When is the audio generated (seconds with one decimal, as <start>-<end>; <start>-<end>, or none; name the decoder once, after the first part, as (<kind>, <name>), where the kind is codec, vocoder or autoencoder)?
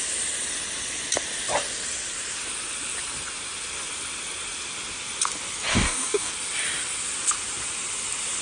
5.7-6.3 (codec, DAC)